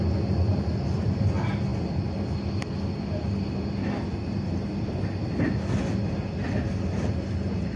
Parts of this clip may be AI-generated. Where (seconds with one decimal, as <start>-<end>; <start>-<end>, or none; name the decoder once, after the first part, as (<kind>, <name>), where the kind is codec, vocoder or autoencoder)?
none